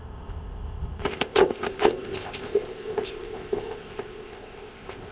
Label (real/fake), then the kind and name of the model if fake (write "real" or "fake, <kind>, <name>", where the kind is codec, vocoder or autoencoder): fake, codec, ZipCodec